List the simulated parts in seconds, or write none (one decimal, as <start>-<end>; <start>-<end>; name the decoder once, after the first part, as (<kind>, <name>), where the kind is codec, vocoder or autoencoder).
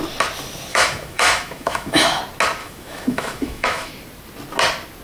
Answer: 0.7-2.2 (autoencoder, DAC-VAE); 2.6-3.9